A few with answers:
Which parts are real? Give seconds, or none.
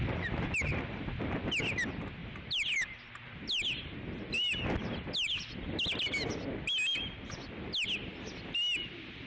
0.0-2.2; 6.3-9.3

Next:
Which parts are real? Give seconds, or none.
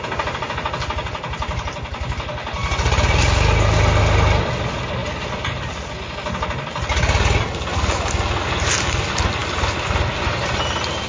0.0-11.1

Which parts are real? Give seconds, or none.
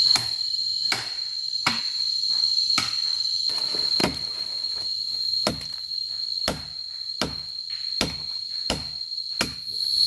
none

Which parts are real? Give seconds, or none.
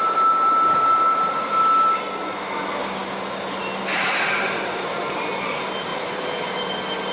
0.0-5.9; 6.4-7.1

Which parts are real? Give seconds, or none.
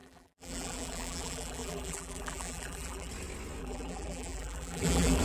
3.1-3.6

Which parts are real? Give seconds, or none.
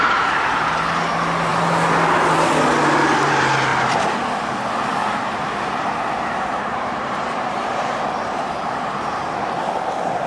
0.0-5.0; 9.6-10.3